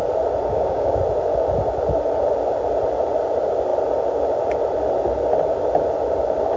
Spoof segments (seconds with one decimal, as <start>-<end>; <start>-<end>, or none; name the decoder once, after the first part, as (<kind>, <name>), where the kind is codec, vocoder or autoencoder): 0.5-1.0 (codec, DAC)